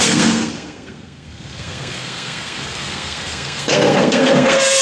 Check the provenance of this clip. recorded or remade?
remade